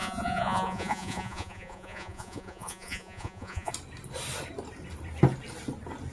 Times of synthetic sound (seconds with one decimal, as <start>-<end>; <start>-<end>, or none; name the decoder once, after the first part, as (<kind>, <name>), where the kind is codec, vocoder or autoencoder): 0.0-3.7 (vocoder, Vocos)